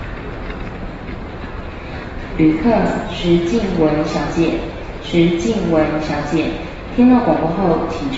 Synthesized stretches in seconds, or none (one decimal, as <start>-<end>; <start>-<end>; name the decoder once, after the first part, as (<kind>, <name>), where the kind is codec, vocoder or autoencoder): none